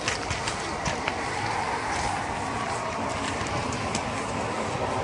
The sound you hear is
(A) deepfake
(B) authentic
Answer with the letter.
B